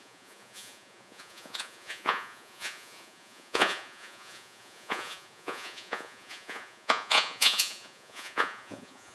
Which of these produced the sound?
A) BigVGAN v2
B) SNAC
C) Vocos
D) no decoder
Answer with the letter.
C